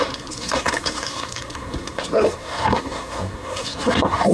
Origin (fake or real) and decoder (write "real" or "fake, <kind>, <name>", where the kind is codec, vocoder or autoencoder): fake, codec, SNAC